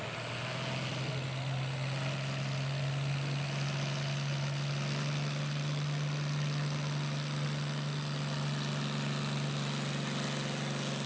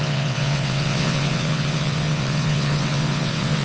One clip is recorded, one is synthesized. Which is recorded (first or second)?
first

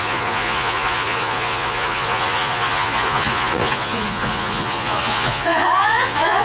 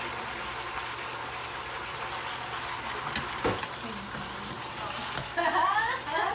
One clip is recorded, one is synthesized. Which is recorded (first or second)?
second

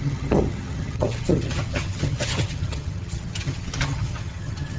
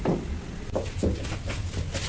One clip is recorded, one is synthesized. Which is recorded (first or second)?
second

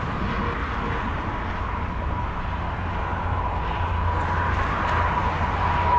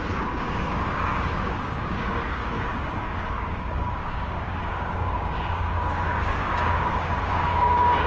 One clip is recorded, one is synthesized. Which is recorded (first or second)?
first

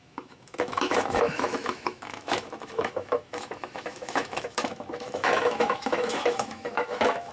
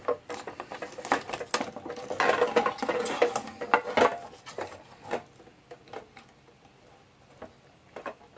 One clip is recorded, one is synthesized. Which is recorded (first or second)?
second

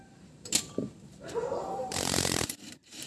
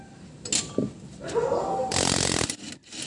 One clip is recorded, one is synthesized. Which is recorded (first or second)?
second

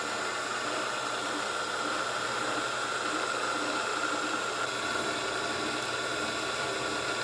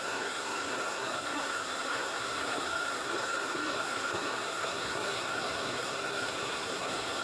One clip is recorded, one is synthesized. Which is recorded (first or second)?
first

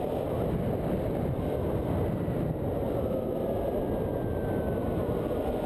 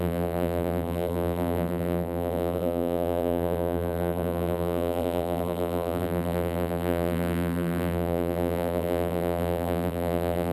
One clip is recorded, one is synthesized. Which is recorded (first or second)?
first